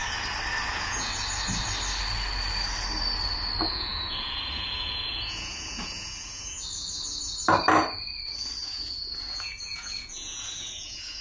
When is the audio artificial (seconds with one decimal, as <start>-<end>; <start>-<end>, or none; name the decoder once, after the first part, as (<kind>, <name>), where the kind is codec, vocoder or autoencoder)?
0.7-1.1 (vocoder, Vocos); 3.7-6.6; 8.6-11.2